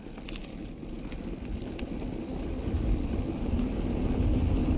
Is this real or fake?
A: real